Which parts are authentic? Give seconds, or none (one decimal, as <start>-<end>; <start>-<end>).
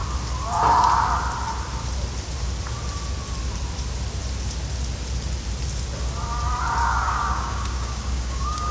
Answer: 0.0-6.8